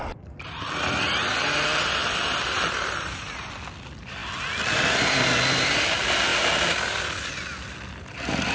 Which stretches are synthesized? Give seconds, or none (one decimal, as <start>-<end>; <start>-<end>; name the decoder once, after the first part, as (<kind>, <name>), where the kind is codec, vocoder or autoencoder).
none